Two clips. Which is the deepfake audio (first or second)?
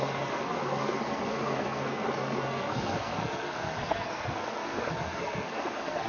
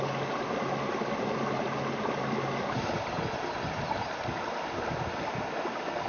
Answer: first